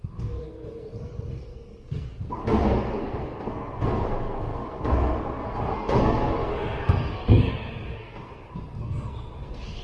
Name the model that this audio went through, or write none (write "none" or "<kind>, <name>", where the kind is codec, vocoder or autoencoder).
codec, SNAC